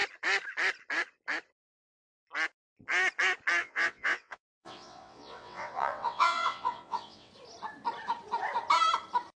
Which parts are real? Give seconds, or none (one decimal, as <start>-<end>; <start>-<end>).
0.0-3.6; 7.3-9.4